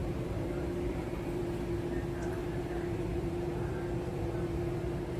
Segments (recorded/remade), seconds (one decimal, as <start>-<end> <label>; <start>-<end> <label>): 0.0-1.4 remade; 1.4-2.4 recorded; 2.4-4.8 remade; 4.8-5.2 recorded